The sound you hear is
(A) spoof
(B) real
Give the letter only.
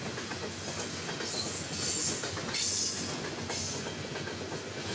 A